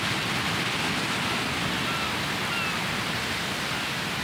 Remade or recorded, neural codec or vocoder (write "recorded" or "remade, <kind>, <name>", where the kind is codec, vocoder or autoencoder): recorded